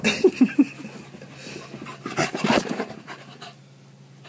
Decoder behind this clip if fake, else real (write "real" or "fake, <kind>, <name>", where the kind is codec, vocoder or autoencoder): real